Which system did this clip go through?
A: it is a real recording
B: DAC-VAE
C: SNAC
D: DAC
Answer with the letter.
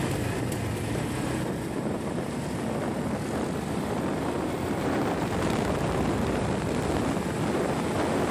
A